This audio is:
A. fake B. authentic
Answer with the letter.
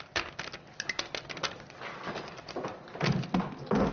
B